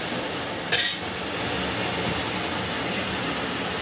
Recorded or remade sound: recorded